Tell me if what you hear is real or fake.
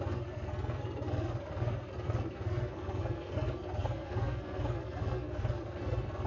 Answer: fake